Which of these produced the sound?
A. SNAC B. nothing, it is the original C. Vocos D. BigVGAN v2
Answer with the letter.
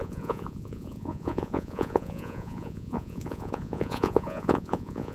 C